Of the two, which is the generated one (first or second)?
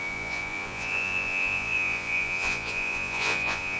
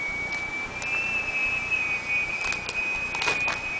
first